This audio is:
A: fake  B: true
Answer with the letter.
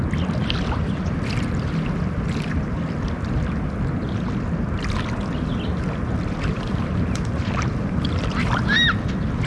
B